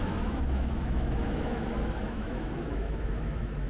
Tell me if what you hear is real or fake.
fake